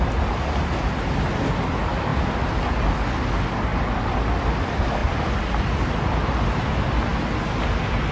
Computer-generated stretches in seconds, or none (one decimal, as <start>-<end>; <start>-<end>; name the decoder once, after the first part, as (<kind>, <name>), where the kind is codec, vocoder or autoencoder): 3.7-4.4 (vocoder, BigVGAN v2); 5.0-5.6